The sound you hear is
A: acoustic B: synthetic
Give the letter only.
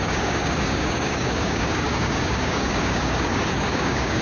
B